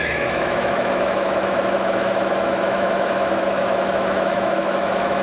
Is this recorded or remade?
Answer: remade